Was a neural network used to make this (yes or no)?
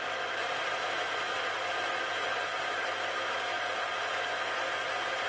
no